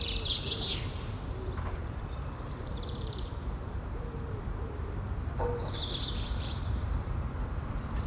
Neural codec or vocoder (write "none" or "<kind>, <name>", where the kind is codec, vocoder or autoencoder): vocoder, BigVGAN v2